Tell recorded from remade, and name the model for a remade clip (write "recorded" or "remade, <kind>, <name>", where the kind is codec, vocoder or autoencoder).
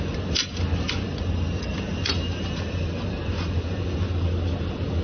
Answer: recorded